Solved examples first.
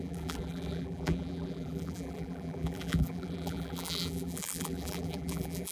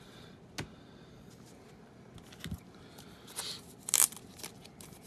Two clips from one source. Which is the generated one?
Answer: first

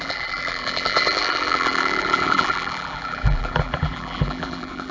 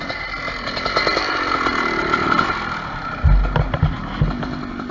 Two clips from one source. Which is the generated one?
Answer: first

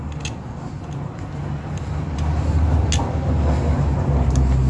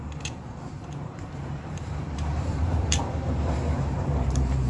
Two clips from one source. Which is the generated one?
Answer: second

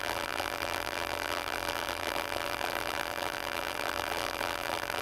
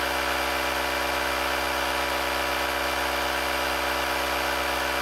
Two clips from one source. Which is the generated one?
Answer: first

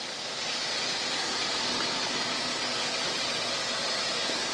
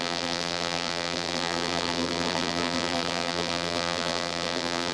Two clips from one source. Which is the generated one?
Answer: second